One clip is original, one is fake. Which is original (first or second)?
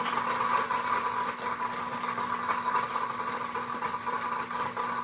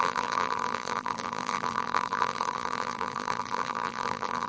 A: first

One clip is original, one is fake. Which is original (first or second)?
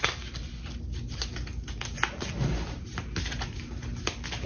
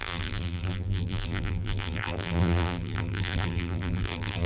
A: first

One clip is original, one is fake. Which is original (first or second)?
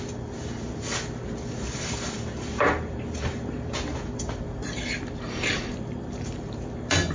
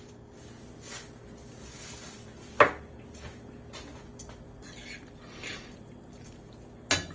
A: second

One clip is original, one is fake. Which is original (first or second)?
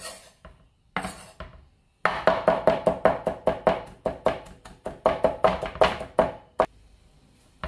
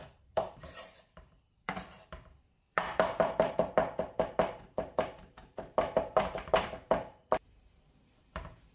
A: first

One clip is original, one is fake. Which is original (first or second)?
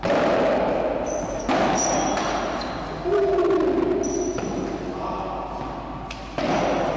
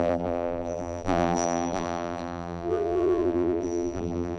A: first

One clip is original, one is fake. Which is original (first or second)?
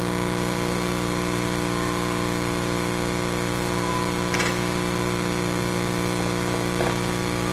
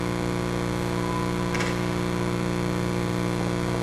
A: second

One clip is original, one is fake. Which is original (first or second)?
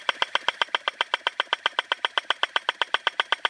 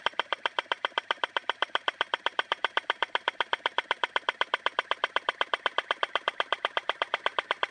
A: first